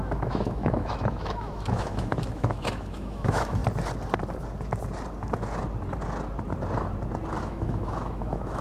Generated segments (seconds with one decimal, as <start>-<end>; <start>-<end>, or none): 0.0-3.6; 7.4-8.6

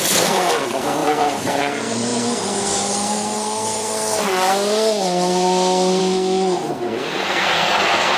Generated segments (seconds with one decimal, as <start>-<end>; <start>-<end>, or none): 0.0-8.2

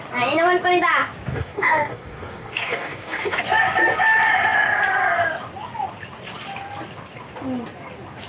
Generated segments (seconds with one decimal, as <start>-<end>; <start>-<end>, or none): 1.3-3.4